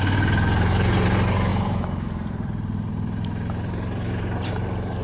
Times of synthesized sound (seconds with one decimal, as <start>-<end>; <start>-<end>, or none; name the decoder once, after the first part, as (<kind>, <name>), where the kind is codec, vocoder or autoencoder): 0.0-5.0 (vocoder, BigVGAN v2)